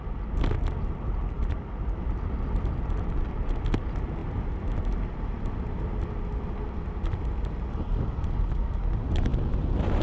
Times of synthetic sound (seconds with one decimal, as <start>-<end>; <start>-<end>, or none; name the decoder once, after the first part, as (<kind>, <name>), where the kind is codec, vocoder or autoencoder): none